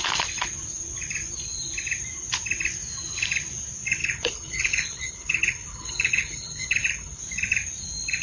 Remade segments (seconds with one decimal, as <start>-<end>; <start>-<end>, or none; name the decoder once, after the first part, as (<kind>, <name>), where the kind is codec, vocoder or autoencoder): 4.0-7.2 (codec, HILCodec)